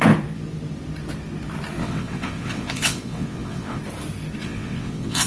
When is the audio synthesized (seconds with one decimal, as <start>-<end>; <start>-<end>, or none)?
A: 1.8-3.8; 4.4-5.3